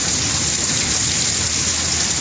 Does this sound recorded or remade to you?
recorded